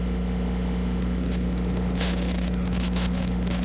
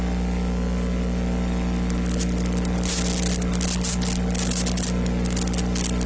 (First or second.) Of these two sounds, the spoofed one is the first